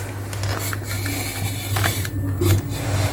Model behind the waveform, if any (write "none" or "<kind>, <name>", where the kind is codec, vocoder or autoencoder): none